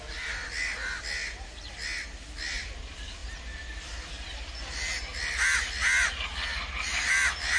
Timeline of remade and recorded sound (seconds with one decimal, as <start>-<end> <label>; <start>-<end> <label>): 0.0-7.6 recorded